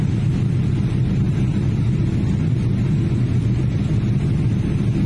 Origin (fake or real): real